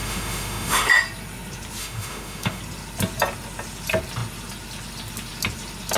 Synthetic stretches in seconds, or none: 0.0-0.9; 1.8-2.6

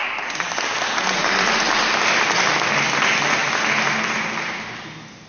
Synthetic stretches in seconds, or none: none

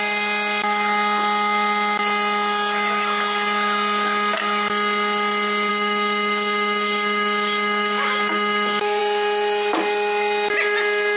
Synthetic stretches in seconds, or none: 5.7-9.0

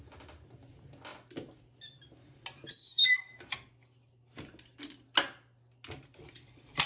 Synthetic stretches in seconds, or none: none

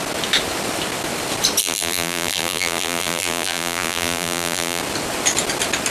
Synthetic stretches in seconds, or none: 1.6-4.8

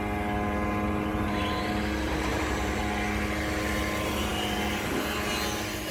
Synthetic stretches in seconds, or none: 1.1-1.7; 2.3-2.8